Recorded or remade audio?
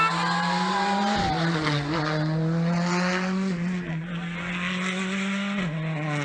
recorded